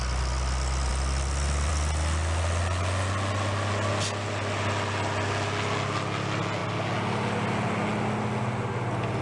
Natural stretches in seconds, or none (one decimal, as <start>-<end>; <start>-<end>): 0.0-9.2